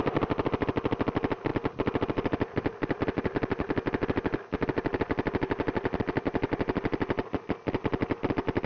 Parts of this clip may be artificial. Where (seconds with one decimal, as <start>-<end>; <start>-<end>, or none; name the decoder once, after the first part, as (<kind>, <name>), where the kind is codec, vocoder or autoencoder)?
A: none